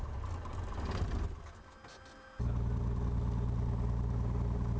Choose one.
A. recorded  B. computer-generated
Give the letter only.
A